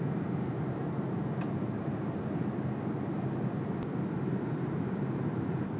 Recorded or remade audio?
recorded